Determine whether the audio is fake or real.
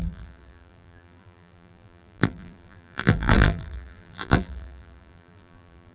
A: fake